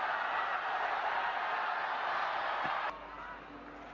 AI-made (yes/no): no